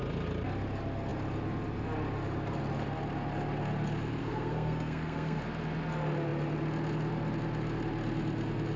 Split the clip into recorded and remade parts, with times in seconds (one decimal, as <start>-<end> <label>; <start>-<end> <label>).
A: 0.0-4.2 recorded; 4.2-5.4 remade; 5.4-8.8 recorded